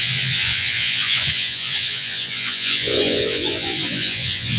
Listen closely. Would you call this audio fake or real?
fake